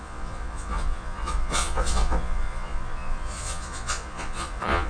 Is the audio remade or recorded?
remade